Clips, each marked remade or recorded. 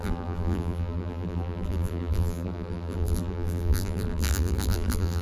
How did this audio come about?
remade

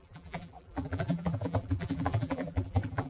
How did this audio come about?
remade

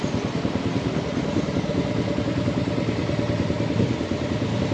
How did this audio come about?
recorded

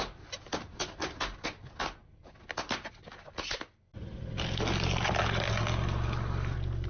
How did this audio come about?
recorded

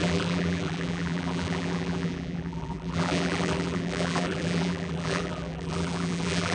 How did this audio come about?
remade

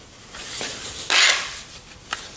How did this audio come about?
recorded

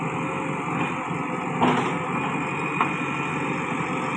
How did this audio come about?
recorded